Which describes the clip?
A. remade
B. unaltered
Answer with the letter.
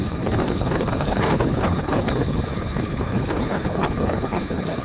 A